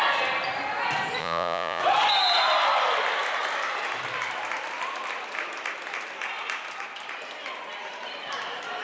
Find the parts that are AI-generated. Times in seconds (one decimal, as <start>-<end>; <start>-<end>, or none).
1.2-1.8